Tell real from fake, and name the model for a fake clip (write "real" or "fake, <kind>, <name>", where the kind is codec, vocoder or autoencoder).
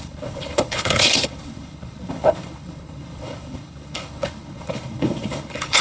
fake, codec, HILCodec